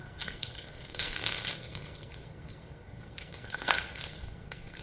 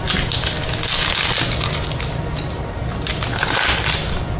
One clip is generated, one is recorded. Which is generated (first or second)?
first